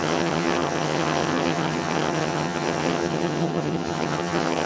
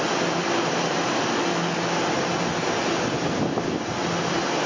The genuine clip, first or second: second